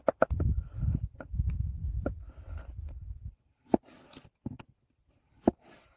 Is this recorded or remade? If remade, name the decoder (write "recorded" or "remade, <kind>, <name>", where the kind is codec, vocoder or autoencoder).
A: remade, vocoder, BigVGAN v2